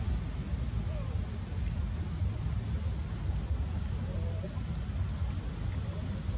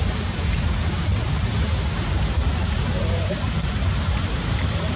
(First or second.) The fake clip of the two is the second